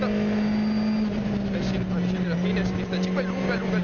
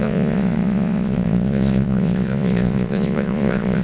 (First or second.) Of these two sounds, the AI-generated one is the second